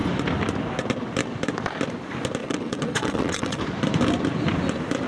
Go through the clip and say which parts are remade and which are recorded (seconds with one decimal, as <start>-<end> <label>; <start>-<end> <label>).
0.0-2.4 recorded; 2.4-3.6 remade; 3.6-5.1 recorded